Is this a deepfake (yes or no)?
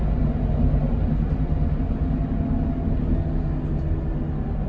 no